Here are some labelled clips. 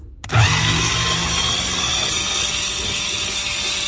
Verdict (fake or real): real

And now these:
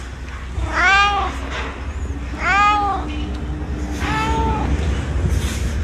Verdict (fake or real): real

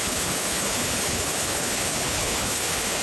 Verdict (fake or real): fake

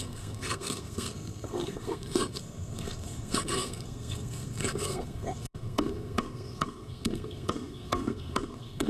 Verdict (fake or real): fake